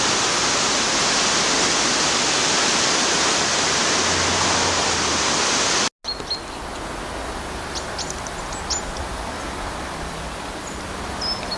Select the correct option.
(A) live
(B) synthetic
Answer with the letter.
A